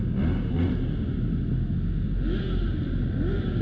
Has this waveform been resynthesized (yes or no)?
no